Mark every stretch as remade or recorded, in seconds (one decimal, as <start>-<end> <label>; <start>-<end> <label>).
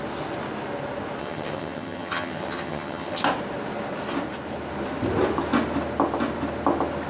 0.0-1.2 recorded; 1.2-3.2 remade; 3.2-7.1 recorded